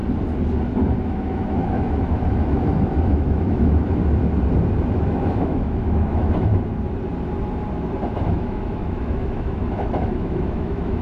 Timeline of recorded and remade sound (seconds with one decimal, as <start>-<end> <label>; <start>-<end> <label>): 0.0-1.0 recorded; 1.0-4.0 remade; 4.0-4.9 recorded; 4.9-6.5 remade; 6.5-8.1 recorded; 8.1-11.0 remade